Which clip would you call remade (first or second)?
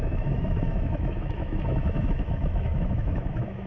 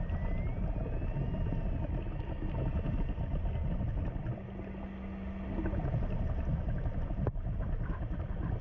first